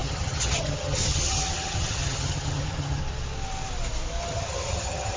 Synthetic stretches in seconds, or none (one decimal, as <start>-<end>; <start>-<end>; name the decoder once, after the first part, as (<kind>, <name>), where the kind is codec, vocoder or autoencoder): 0.0-3.0 (vocoder, HiFi-GAN); 4.2-5.2